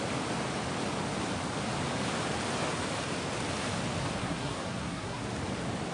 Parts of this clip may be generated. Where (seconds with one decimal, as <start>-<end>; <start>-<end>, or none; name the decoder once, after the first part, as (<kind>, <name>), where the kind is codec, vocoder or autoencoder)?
4.2-5.2 (codec, SNAC)